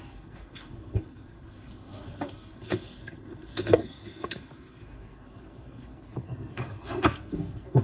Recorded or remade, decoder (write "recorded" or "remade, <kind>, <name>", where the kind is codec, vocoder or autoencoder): remade, codec, SNAC